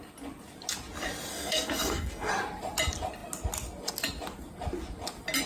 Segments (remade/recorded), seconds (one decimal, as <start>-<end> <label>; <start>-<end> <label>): 0.0-1.3 recorded; 1.3-2.3 remade; 2.3-5.5 recorded